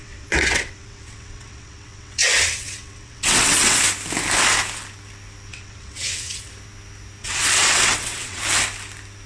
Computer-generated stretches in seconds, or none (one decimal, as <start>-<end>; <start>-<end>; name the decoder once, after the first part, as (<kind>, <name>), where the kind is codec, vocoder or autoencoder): 0.0-3.8 (vocoder, WaveNeXt); 5.5-6.5; 7.2-8.4